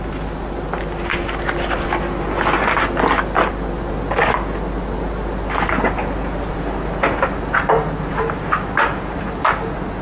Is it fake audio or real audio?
real